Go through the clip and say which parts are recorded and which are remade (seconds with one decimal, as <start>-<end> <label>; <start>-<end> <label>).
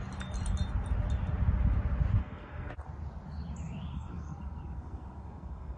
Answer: 0.0-2.2 recorded; 2.2-2.7 remade; 2.7-3.9 recorded; 3.9-5.8 remade